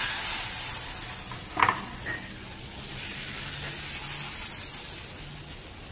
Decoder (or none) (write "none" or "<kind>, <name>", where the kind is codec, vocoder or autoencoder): none